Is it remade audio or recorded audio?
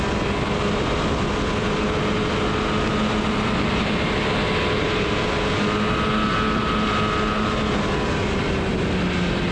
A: recorded